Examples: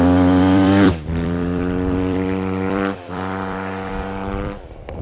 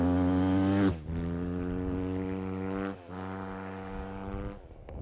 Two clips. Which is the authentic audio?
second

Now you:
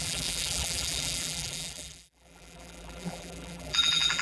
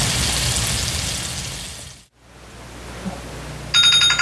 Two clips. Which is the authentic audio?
second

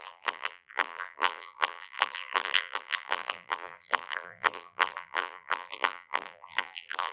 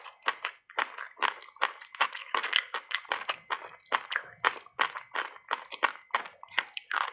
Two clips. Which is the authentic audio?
second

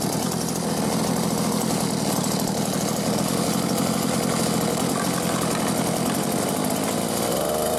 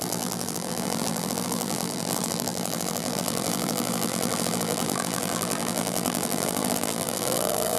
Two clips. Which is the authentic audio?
first